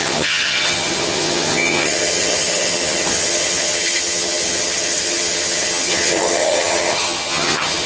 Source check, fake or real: fake